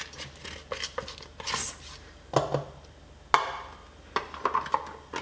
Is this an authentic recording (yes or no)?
yes